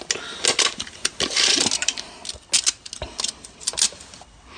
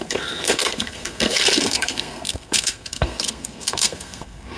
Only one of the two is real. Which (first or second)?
first